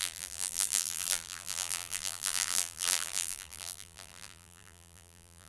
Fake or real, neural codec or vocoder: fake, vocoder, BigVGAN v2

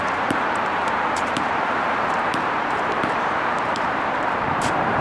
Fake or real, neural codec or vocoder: fake, vocoder, BigVGAN v2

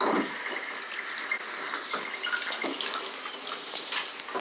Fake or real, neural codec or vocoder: real